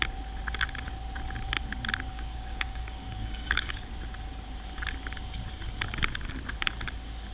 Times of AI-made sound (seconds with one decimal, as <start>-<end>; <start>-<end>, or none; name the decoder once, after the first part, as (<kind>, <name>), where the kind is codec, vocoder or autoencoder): 2.1-3.9 (codec, DAC)